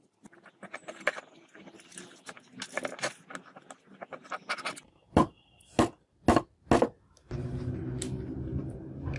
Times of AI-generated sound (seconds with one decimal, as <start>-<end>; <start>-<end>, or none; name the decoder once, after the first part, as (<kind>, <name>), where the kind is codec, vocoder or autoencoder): none